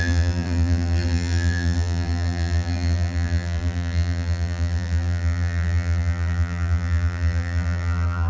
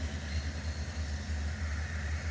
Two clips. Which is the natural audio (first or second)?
second